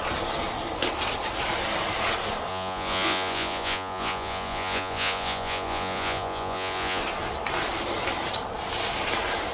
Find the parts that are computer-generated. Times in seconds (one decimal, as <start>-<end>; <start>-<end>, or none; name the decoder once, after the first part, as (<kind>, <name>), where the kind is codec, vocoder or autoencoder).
2.5-7.0 (vocoder, Vocos)